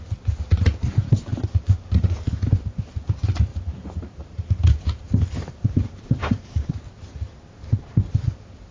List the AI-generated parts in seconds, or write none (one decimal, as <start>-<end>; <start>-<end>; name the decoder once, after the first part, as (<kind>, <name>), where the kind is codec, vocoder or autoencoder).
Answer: 3.5-6.7 (vocoder, BigVGAN v2)

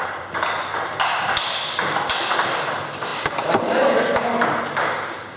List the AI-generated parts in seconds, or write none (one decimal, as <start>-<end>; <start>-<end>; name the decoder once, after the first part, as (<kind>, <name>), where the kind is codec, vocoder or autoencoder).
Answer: none

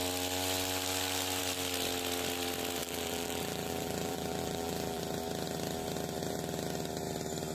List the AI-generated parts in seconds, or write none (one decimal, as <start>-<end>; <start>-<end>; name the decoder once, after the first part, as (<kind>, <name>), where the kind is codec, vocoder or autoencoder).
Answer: 2.8-5.0 (vocoder, BigVGAN v2)

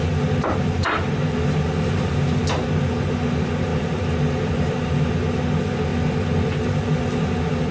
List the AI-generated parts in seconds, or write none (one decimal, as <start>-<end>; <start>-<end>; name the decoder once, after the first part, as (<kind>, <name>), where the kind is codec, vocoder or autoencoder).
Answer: 0.8-2.3 (vocoder, BigVGAN v2); 3.7-5.1; 5.9-6.6

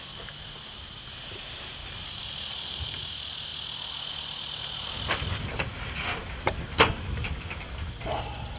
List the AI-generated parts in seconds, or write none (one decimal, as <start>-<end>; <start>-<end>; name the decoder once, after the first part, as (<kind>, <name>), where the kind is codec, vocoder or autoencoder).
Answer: 1.8-3.0 (vocoder, BigVGAN v2); 6.2-6.9

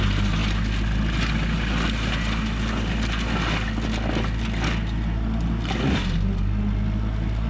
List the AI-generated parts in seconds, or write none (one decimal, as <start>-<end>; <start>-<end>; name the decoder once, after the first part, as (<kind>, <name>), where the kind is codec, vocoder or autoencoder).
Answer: none

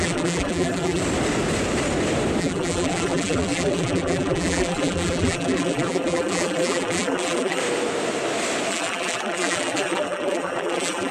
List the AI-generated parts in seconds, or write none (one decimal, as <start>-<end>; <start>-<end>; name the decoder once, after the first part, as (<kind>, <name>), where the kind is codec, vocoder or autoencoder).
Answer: 0.0-1.0 (vocoder, BigVGAN v2); 2.4-7.6; 8.7-11.1

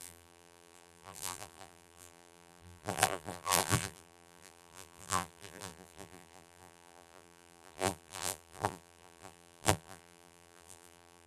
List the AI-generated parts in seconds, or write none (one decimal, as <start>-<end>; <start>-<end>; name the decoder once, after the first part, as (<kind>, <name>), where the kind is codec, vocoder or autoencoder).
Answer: 0.0-11.3 (vocoder, BigVGAN v2)